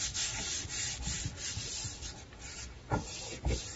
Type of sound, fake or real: real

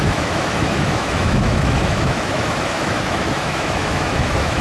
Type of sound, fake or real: fake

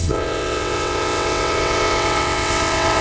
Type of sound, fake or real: fake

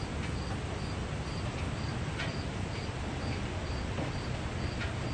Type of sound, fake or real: real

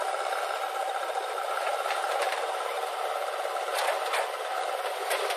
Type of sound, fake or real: fake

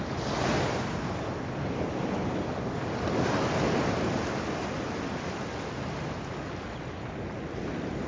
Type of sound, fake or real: real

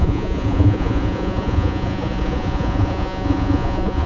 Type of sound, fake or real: fake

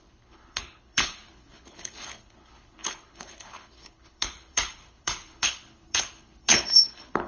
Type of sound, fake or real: fake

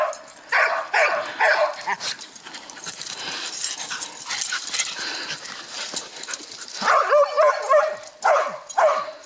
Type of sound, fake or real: real